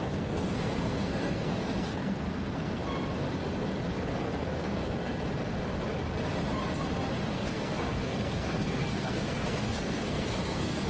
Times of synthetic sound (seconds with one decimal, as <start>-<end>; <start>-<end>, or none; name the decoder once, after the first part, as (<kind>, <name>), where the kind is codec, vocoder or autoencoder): 0.0-2.8 (codec, SNAC); 4.1-4.8; 7.3-10.9